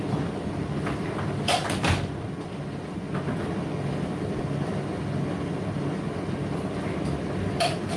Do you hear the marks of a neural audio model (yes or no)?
no